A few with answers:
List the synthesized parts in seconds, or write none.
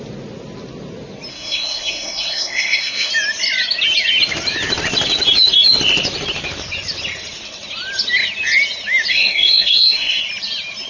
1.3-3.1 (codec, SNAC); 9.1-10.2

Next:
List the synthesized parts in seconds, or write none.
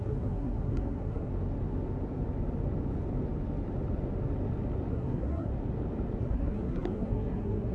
0.0-1.3 (codec, SNAC); 4.9-5.5; 6.2-7.7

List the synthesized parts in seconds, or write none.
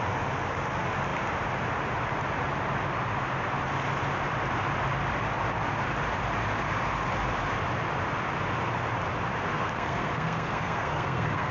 9.5-11.5 (codec, SNAC)